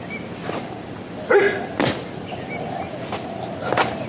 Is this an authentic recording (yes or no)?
yes